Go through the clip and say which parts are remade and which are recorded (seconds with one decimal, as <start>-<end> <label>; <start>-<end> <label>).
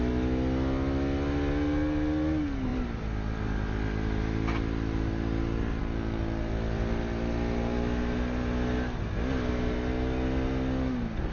0.0-11.3 recorded